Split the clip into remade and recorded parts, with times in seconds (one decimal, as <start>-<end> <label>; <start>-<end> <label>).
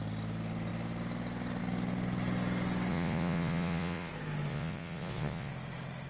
0.0-2.9 recorded; 2.9-4.1 remade; 4.1-4.5 recorded; 4.5-5.5 remade; 5.5-6.1 recorded